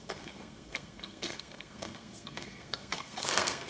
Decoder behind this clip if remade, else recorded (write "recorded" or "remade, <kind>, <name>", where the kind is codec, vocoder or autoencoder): remade, codec, SNAC